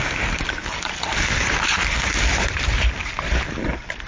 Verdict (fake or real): real